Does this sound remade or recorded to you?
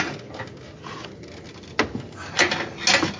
recorded